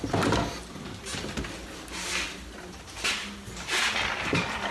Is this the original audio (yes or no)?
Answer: yes